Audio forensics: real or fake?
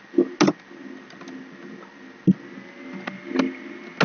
real